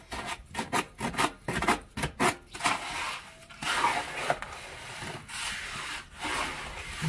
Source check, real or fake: real